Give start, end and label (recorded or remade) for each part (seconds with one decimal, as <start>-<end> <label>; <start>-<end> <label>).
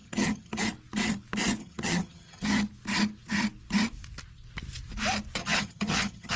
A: 0.0-0.6 remade; 0.6-1.6 recorded; 1.6-2.6 remade; 2.6-5.4 recorded; 5.4-6.4 remade